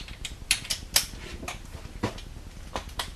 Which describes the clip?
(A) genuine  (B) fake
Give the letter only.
A